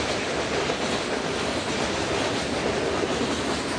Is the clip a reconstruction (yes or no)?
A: no